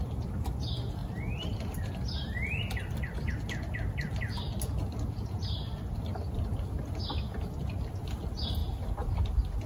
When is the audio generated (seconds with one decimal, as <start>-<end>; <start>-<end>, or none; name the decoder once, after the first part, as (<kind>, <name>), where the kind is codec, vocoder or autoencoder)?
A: none